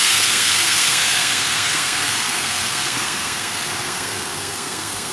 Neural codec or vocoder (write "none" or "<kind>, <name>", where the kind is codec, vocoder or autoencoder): codec, SNAC